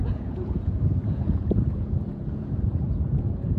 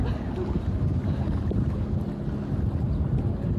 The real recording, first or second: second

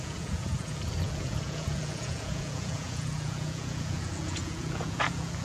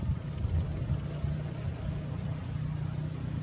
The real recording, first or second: second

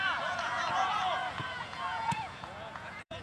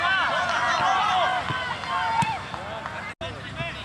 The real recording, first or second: second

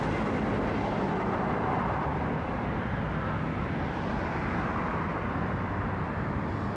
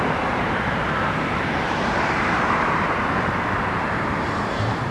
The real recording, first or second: first